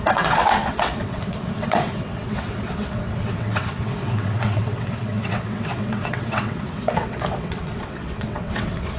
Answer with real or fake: fake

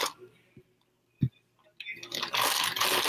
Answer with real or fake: real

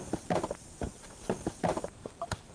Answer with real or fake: fake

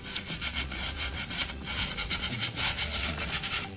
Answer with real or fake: fake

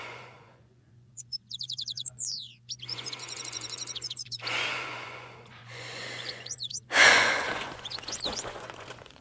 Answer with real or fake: fake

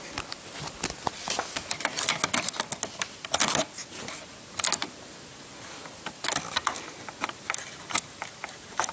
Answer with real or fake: real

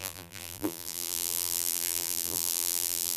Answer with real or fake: fake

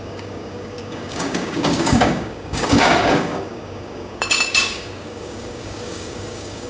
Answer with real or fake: fake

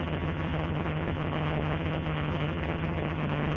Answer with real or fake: fake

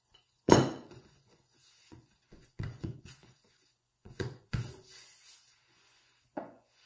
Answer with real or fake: fake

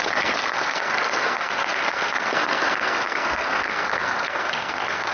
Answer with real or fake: fake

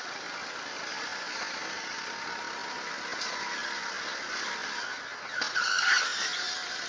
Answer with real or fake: real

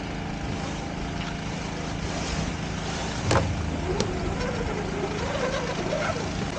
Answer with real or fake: real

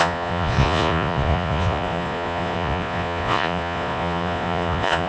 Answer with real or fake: fake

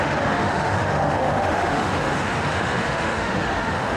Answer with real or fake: fake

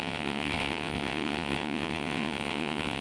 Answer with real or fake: fake